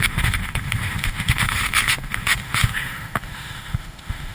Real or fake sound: fake